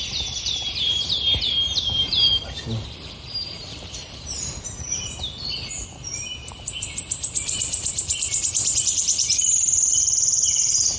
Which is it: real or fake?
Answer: fake